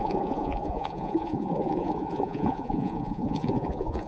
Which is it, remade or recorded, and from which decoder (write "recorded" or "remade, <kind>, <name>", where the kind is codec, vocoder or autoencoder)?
remade, vocoder, Vocos